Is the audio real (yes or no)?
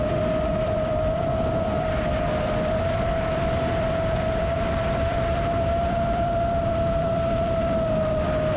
no